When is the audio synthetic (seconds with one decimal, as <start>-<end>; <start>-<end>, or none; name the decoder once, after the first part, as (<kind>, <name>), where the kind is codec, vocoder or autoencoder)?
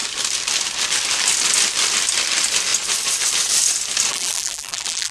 4.1-5.1 (vocoder, BigVGAN v2)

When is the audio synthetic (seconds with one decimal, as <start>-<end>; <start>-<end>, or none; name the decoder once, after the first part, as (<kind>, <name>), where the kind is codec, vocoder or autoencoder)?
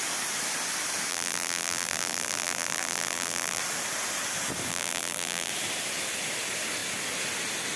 1.1-3.6 (vocoder, BigVGAN v2); 4.7-5.5